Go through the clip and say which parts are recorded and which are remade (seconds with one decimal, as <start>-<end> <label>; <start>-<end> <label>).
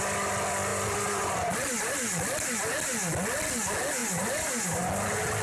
0.0-0.7 recorded; 0.7-1.5 remade; 1.5-4.0 recorded; 4.0-4.9 remade; 4.9-5.4 recorded